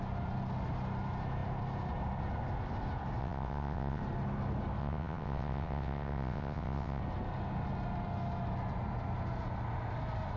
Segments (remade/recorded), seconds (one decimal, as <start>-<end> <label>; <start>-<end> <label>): 0.0-3.2 recorded; 3.2-4.0 remade; 4.0-4.8 recorded; 4.8-7.0 remade; 7.0-10.4 recorded